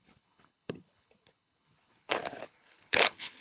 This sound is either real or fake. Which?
fake